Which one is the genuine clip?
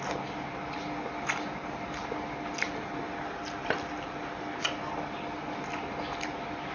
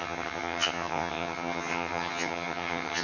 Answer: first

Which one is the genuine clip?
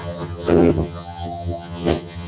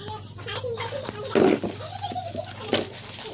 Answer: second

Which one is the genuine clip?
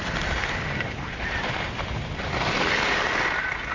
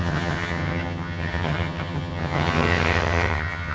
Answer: first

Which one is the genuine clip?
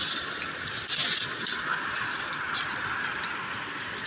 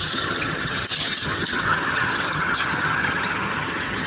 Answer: first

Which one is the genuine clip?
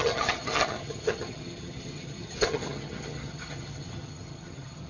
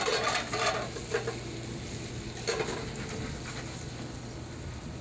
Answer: second